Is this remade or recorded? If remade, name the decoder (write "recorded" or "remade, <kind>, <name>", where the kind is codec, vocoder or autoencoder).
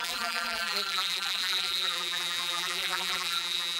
remade, vocoder, BigVGAN v2